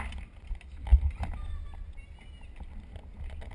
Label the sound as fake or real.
real